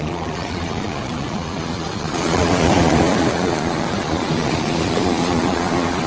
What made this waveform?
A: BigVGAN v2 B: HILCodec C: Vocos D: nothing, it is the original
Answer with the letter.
C